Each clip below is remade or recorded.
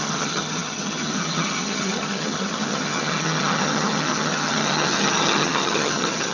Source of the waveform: remade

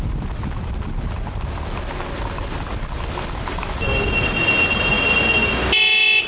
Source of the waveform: recorded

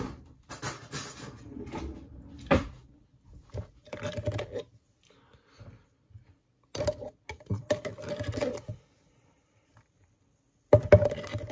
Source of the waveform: recorded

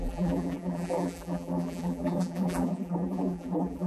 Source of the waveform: remade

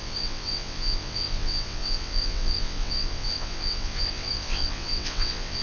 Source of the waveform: remade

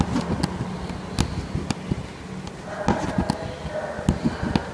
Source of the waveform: recorded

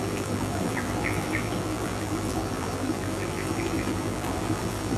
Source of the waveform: remade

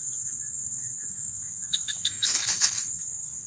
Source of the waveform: remade